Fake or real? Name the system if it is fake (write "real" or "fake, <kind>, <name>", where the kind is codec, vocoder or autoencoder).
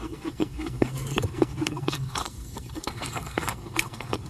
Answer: fake, codec, SNAC